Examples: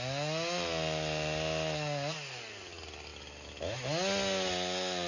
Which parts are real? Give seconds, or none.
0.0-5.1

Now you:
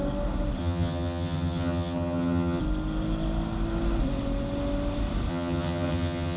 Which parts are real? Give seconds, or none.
0.0-0.6; 2.6-5.3

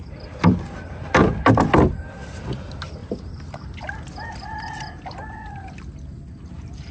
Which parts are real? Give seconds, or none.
0.0-6.9